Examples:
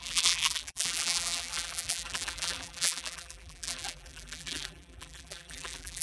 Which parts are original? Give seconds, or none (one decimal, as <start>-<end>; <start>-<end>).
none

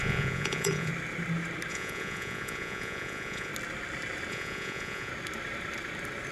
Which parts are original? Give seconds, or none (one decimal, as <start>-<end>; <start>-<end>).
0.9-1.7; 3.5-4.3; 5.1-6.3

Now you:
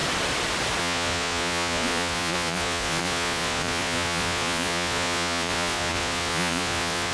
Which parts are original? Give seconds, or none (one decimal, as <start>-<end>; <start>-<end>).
0.0-0.8

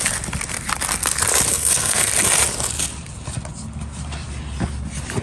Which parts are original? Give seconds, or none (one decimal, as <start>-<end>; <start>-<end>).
0.0-1.5; 2.1-5.2